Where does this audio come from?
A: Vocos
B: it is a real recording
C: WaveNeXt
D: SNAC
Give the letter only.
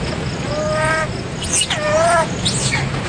B